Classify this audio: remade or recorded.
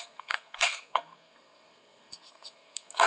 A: remade